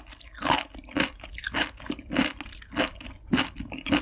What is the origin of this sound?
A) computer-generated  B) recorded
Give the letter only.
B